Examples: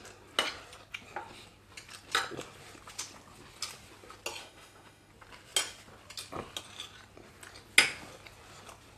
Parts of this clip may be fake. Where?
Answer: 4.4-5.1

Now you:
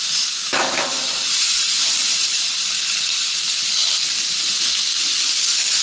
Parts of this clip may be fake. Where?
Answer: 0.0-0.9; 4.4-4.9

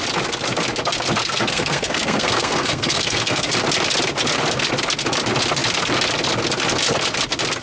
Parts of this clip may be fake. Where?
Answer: 1.2-3.5

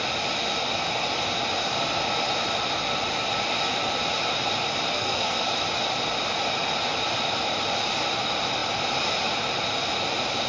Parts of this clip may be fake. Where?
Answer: 4.9-5.4

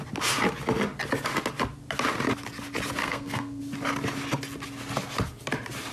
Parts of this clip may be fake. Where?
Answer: 3.0-3.6